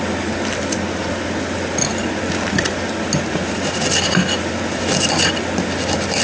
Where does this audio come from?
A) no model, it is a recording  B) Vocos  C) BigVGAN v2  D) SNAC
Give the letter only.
A